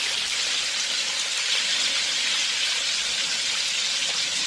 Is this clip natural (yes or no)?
no